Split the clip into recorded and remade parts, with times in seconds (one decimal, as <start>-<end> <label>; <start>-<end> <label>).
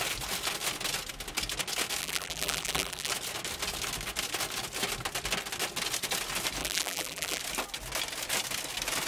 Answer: 0.0-2.0 recorded; 2.0-3.1 remade; 3.1-6.6 recorded; 6.6-7.4 remade; 7.4-9.1 recorded